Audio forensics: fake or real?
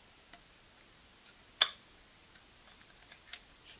real